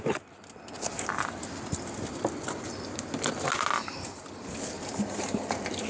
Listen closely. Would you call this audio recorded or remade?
recorded